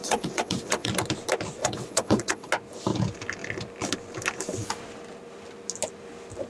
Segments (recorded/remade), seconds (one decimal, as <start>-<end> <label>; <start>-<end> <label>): 0.0-0.9 remade; 0.9-1.6 recorded; 1.6-2.5 remade; 2.5-6.5 recorded